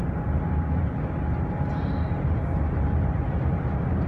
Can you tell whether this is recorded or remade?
recorded